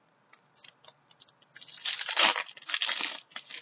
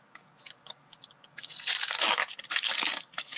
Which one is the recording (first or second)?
first